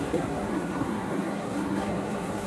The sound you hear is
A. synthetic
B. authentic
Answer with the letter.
A